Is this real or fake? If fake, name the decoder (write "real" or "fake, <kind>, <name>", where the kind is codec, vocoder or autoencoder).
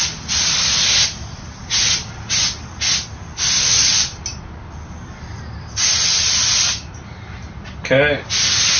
real